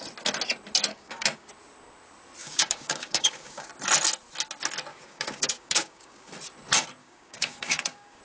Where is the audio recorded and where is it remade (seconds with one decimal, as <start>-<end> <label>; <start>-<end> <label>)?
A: 0.0-0.9 recorded; 0.9-1.5 remade; 1.5-2.4 recorded; 2.4-3.7 remade; 3.7-4.9 recorded; 4.9-6.3 remade; 6.3-7.0 recorded; 7.0-8.2 remade